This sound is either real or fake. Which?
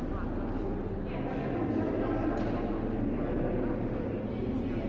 real